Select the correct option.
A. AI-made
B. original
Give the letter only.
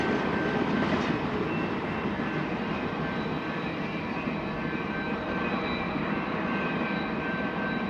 A